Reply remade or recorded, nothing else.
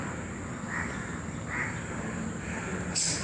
recorded